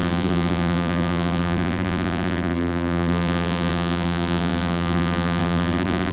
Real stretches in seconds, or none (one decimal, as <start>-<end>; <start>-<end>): none